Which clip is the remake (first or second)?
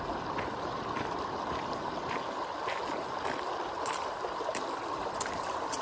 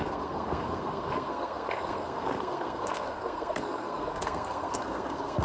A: second